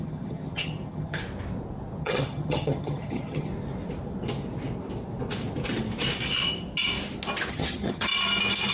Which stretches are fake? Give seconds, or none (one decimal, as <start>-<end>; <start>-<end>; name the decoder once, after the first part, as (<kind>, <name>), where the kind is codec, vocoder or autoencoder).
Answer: 0.0-1.2 (vocoder, HiFi-GAN); 2.0-3.5; 7.5-8.1